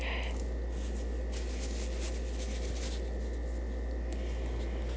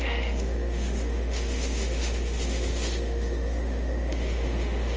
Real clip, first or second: first